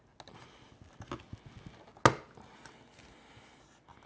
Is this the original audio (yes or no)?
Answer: yes